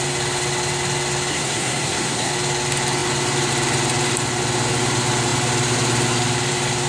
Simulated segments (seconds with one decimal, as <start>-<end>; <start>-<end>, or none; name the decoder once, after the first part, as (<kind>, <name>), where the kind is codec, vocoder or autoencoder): 1.3-2.3 (codec, SNAC)